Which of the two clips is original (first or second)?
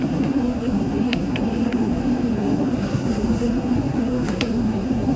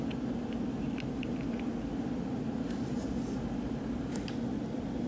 second